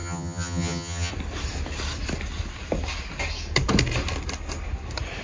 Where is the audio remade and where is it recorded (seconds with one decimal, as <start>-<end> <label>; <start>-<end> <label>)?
0.0-1.1 remade; 1.1-5.2 recorded